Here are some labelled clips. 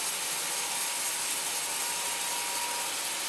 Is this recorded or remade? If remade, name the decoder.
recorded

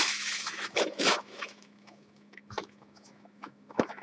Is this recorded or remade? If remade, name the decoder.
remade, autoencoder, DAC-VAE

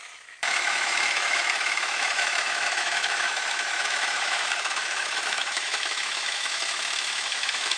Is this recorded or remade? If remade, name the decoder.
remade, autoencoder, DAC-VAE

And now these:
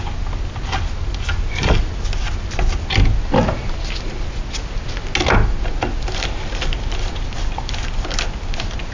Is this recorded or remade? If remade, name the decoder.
recorded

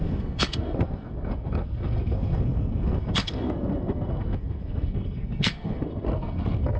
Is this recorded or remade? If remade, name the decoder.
remade, codec, SNAC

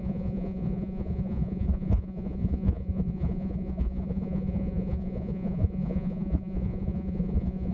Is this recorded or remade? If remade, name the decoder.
remade, vocoder, Vocos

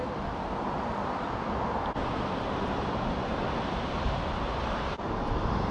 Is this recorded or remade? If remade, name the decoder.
recorded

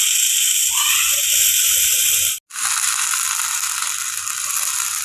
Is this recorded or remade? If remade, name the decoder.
recorded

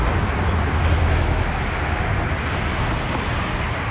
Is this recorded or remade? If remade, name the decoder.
recorded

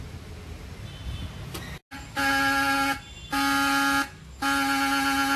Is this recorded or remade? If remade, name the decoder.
recorded